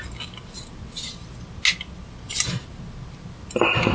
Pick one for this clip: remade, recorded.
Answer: recorded